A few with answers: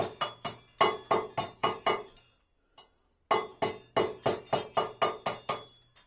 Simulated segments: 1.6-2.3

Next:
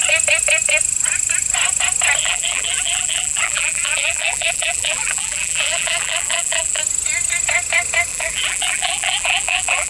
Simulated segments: 2.2-6.8; 8.1-9.9

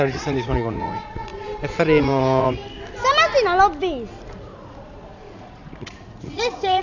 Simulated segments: 0.0-1.3; 2.0-2.6; 4.3-6.8